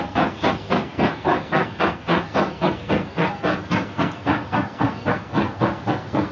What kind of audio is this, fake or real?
fake